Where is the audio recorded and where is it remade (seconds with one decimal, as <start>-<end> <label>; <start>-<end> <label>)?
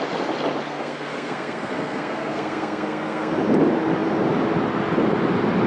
0.0-0.7 recorded; 0.7-3.3 remade; 3.3-5.7 recorded